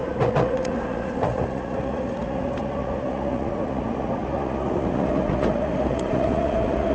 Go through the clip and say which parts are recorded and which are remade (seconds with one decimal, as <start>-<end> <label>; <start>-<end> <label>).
0.0-6.9 remade